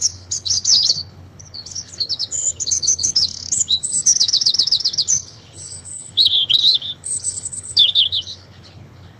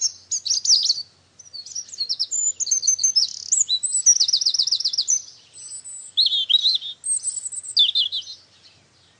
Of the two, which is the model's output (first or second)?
first